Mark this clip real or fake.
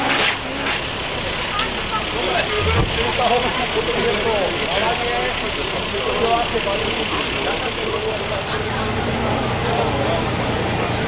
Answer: real